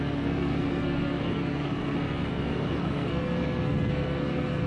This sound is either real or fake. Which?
fake